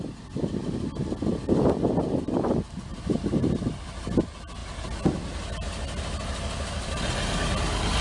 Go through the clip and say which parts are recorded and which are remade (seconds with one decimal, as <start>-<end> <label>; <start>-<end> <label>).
0.0-2.9 recorded; 2.9-3.5 remade; 3.5-8.0 recorded